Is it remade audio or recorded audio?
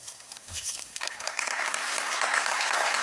remade